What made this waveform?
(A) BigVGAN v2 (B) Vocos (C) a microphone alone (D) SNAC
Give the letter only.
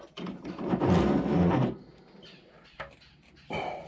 C